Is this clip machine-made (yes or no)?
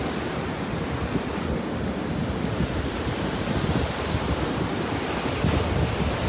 yes